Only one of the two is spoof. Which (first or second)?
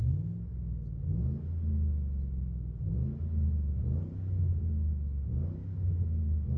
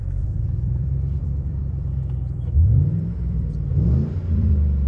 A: second